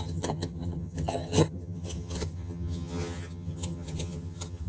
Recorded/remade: remade